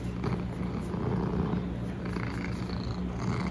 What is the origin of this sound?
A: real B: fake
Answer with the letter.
A